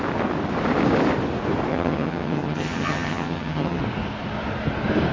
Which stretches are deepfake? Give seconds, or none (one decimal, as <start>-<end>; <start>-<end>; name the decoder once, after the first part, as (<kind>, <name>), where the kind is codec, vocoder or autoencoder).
1.7-3.8 (vocoder, HiFi-GAN)